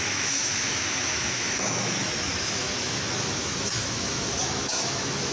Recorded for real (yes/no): no